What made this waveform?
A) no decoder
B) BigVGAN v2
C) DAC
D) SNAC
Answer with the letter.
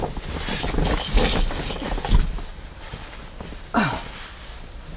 A